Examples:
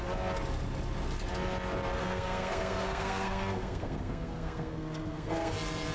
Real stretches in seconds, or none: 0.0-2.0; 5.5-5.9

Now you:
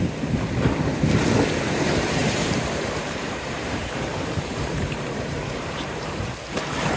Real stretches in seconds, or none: 0.0-2.2; 6.4-7.0

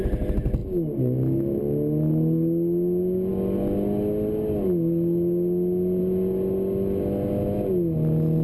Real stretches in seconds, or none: 0.0-8.4

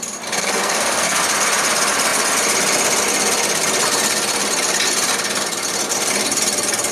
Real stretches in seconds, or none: 0.0-0.4; 1.2-6.9

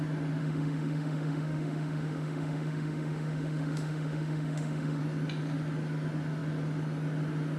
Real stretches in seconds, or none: 0.0-0.4; 5.0-7.6

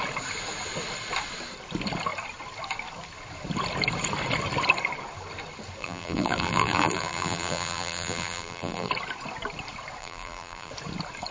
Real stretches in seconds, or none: 0.0-5.8; 8.9-10.0; 10.7-11.3

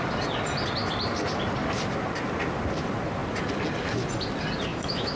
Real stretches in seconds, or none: 0.0-4.7

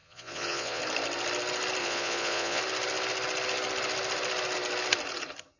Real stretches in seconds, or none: 0.8-1.8; 2.6-5.6